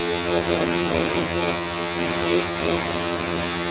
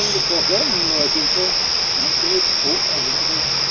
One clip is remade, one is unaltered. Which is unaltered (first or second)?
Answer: second